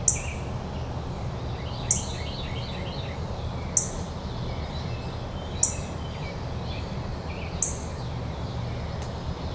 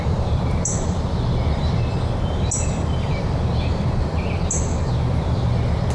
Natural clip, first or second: first